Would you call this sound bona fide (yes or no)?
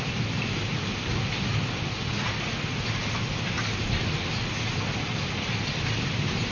yes